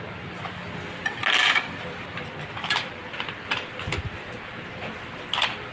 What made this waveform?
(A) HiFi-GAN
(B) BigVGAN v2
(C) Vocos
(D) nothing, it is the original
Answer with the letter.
D